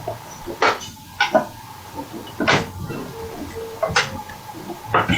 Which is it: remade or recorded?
recorded